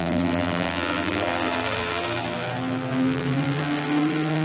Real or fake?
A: fake